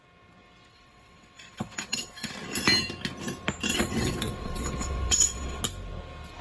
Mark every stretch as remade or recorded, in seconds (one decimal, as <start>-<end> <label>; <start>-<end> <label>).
0.0-0.7 recorded; 0.7-2.3 remade; 2.3-3.7 recorded; 3.7-5.6 remade; 5.6-6.4 recorded